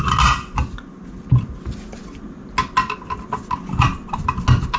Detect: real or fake real